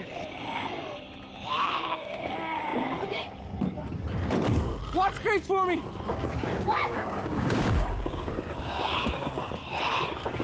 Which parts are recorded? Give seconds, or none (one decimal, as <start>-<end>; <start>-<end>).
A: 0.0-1.6; 2.3-6.1; 9.5-10.4